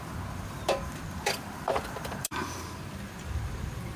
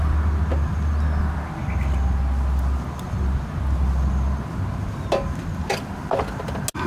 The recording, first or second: second